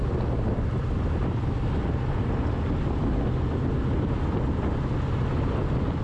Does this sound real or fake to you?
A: real